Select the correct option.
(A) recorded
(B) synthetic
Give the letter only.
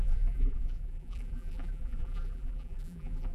B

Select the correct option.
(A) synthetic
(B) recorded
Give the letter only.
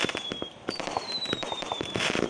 A